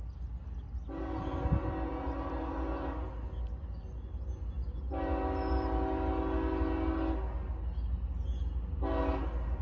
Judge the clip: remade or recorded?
recorded